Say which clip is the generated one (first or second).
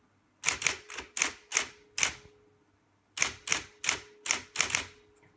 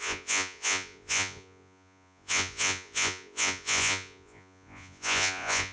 second